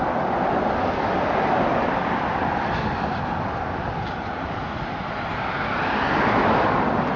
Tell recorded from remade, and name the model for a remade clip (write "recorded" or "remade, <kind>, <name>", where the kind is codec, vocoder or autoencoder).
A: recorded